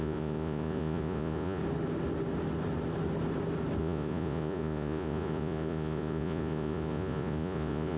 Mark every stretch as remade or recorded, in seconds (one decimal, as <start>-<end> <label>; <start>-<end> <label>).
0.0-1.6 remade; 1.6-3.8 recorded; 3.8-8.0 remade